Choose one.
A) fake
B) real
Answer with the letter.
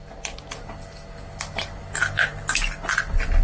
B